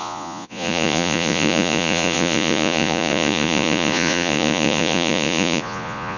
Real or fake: fake